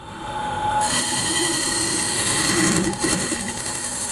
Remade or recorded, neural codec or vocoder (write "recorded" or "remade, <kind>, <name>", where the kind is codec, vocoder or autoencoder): remade, autoencoder, DAC-VAE